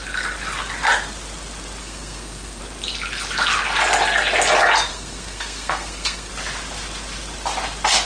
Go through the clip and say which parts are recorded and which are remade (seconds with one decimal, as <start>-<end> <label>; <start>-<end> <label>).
0.0-1.8 recorded; 1.8-2.6 remade; 2.6-4.9 recorded; 4.9-6.3 remade; 6.3-8.1 recorded